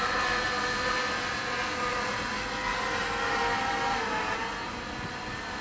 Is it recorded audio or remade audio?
recorded